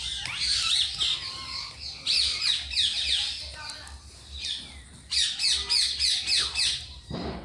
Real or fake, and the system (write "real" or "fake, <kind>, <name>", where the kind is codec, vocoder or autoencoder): real